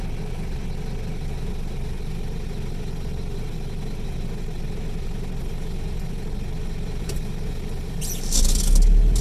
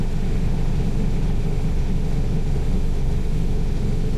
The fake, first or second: second